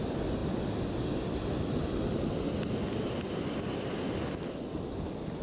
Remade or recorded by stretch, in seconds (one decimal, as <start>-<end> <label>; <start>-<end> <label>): 0.0-5.4 recorded